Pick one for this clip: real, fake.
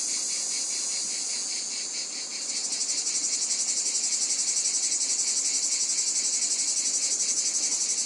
real